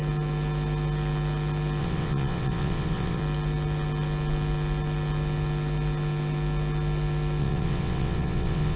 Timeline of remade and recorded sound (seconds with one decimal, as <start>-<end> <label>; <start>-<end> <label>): 0.0-1.8 recorded; 1.8-3.2 remade; 3.2-7.4 recorded; 7.4-8.8 remade